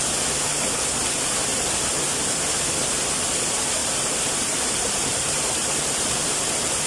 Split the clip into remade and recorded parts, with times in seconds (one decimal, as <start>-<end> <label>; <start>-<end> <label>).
0.0-1.5 recorded; 1.5-2.1 remade; 2.1-3.8 recorded; 3.8-6.3 remade; 6.3-6.9 recorded